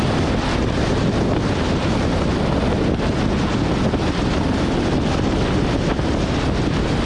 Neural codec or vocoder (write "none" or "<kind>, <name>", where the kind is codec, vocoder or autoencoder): none